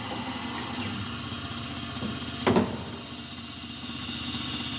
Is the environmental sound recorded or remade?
recorded